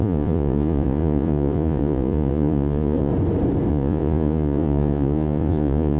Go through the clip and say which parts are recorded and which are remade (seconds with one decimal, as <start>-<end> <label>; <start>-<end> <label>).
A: 0.0-3.1 remade; 3.1-3.7 recorded; 3.7-6.0 remade